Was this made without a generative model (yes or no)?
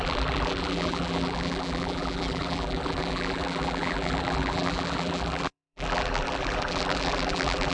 no